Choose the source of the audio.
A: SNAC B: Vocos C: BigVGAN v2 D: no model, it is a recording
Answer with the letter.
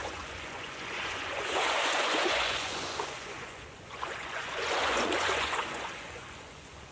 B